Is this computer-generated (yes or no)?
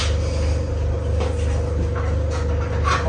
no